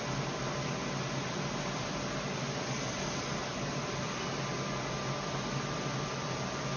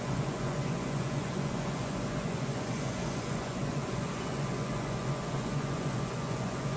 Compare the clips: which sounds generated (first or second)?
second